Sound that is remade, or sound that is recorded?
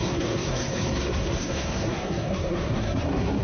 remade